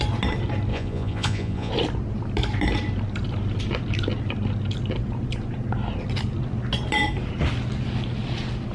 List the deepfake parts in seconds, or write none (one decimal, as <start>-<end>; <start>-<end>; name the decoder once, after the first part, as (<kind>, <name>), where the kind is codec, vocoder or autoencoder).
0.7-1.7 (vocoder, Vocos)